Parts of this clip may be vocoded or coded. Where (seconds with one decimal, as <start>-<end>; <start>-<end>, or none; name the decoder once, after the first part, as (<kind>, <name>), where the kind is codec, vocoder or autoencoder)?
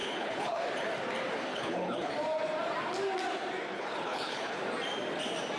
0.0-0.6 (codec, HILCodec); 1.5-2.1; 3.7-4.6